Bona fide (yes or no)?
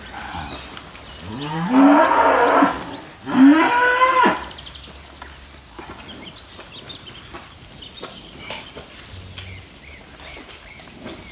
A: yes